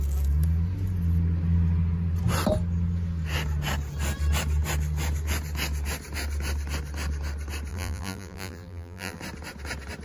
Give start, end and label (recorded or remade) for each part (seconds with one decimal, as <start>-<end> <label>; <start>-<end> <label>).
0.0-7.7 recorded; 7.7-9.2 remade; 9.2-10.0 recorded